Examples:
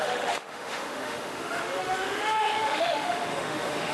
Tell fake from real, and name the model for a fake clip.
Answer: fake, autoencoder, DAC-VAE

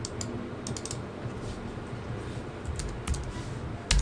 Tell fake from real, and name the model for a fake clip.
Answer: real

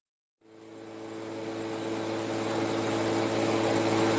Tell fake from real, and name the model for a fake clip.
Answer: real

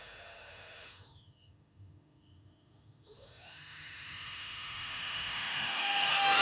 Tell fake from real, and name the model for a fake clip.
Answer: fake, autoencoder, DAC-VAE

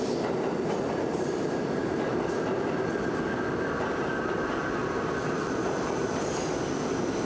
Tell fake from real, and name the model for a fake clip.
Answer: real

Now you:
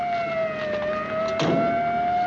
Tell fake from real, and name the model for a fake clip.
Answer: real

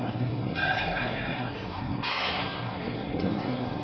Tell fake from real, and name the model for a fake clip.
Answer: fake, codec, SNAC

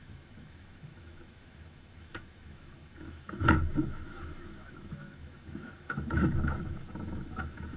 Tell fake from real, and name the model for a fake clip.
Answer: fake, autoencoder, DAC-VAE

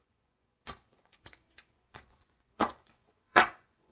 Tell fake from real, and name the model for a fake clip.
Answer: fake, vocoder, Vocos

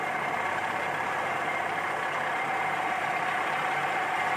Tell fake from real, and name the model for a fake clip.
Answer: real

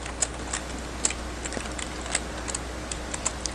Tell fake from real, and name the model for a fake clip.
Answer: real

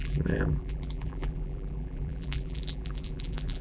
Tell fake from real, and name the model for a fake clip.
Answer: fake, vocoder, BigVGAN v2